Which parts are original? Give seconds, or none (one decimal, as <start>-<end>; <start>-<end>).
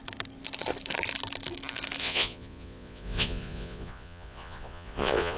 0.0-2.0